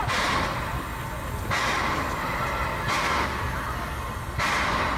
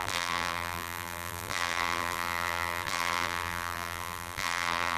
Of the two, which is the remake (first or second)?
second